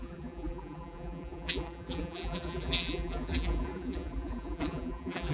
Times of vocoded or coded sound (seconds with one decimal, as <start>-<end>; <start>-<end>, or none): 0.0-5.3